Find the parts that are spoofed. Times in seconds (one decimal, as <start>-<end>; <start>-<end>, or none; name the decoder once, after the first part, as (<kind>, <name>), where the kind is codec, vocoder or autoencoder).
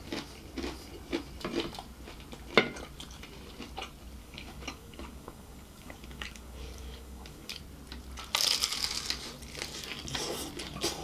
4.2-7.6 (codec, DAC)